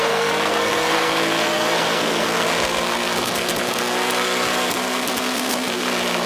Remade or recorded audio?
remade